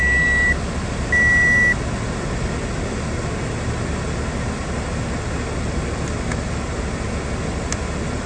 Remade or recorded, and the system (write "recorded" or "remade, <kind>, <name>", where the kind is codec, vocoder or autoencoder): recorded